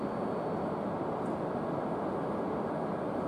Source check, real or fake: real